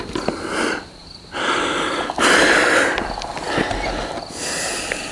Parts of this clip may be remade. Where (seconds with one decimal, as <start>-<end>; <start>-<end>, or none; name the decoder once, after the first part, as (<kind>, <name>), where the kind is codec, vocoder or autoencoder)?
none